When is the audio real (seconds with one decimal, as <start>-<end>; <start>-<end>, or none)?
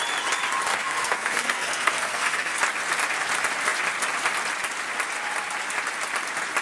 0.0-0.7; 2.6-6.6